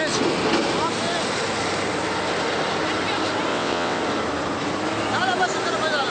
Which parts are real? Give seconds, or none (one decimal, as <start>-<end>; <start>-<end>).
0.0-3.5; 4.0-6.1

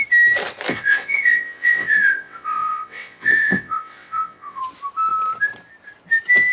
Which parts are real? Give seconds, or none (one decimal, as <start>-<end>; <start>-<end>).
0.0-0.7; 4.6-6.5

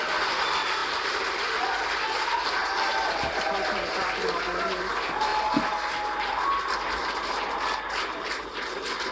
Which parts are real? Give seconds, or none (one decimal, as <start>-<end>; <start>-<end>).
0.0-9.1

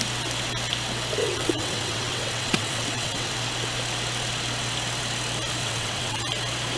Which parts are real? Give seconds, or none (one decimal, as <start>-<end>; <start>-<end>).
0.0-1.2; 3.3-5.6; 6.2-6.8

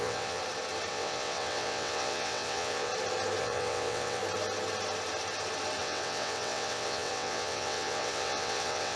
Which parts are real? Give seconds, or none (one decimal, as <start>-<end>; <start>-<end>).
0.4-0.9; 2.9-3.4; 4.2-5.8

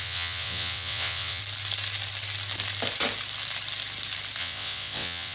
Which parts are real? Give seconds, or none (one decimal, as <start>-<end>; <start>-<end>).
1.4-4.4